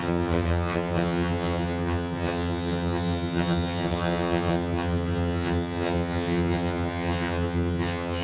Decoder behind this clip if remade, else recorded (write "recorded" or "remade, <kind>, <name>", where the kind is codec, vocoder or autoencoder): remade, vocoder, HiFi-GAN